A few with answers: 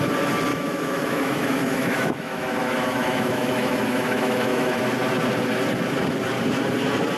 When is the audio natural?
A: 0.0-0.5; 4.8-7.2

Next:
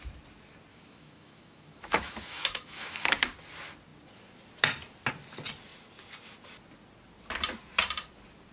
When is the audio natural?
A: 0.0-0.7; 3.2-8.5

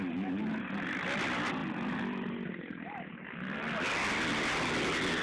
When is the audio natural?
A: 0.0-5.2